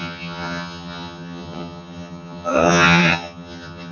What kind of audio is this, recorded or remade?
remade